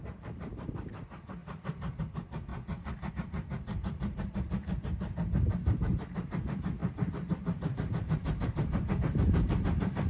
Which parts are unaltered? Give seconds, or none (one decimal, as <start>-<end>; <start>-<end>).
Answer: 2.5-3.1